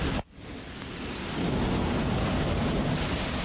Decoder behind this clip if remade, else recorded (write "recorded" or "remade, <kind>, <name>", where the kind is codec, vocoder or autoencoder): recorded